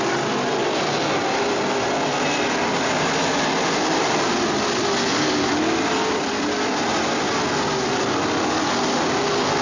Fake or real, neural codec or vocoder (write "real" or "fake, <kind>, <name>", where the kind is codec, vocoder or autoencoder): real